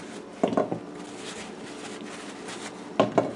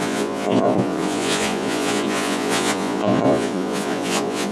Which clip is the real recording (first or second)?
first